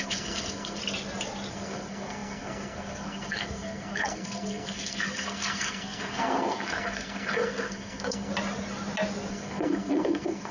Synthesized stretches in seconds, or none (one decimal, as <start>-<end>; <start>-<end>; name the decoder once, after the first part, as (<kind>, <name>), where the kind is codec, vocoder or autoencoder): 0.0-0.8 (codec, SNAC); 1.5-8.3; 9.3-10.5